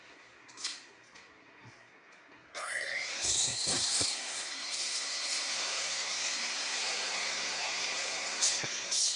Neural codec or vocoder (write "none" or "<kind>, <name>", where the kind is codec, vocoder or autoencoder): codec, SNAC